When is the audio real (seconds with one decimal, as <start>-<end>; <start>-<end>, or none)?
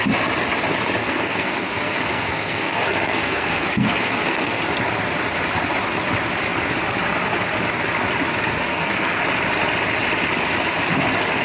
0.0-1.0; 4.6-8.7; 9.2-11.4